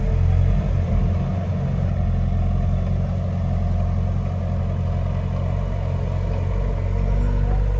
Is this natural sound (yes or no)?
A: yes